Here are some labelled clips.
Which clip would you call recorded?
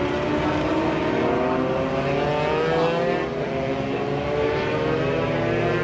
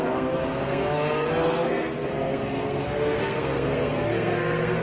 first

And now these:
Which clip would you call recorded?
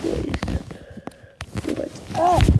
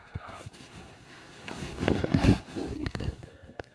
first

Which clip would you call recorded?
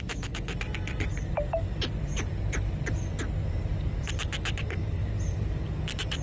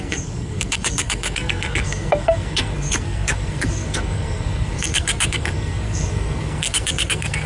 first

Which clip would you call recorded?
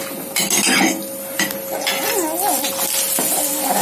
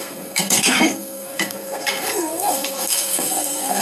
first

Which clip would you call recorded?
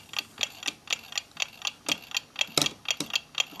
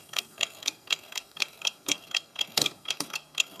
first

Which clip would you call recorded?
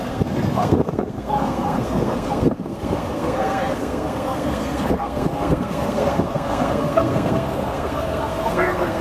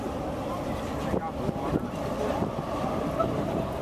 second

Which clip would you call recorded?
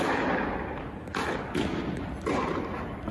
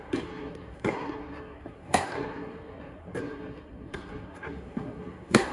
first